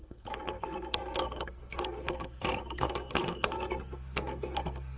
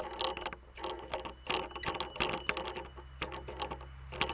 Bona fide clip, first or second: second